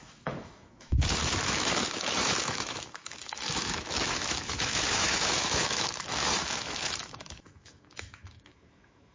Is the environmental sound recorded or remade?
remade